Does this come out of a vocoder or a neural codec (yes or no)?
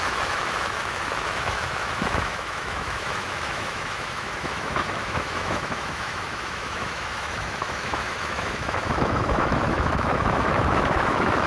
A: yes